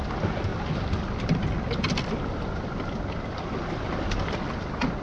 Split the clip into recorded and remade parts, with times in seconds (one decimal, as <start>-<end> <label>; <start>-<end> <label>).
0.0-5.0 recorded

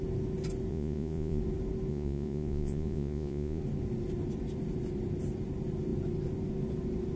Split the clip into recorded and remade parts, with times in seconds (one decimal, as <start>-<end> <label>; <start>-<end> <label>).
0.0-0.7 recorded; 0.7-1.4 remade; 1.4-1.9 recorded; 1.9-3.6 remade; 3.6-7.2 recorded